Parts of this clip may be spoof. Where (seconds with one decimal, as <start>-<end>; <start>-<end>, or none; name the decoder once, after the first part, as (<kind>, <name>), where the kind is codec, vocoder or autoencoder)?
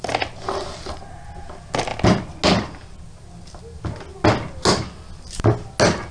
none